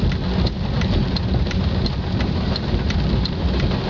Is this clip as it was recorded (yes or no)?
yes